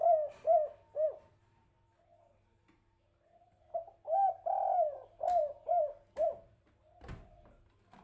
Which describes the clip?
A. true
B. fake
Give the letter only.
A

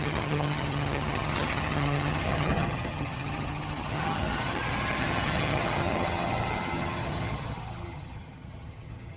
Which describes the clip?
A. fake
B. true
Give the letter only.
A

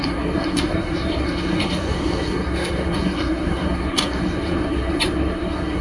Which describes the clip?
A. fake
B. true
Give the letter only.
A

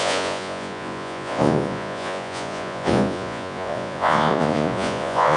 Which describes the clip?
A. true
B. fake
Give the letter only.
B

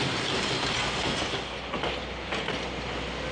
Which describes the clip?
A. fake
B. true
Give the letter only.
B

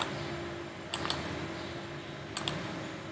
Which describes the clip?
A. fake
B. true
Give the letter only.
B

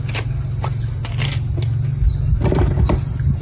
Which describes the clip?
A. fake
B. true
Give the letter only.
B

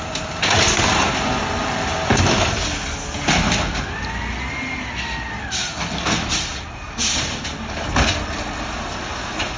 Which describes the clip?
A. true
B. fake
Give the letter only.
A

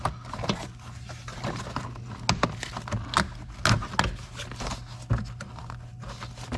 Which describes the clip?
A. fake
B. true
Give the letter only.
B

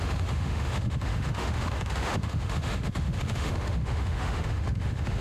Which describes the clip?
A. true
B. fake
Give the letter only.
B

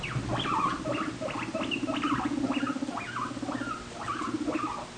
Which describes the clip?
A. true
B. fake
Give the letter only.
A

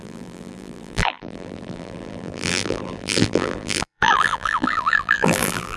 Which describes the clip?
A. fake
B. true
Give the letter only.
A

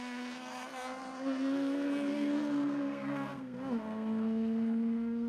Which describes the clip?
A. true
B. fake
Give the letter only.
B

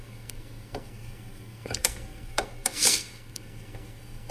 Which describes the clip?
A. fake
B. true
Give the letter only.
A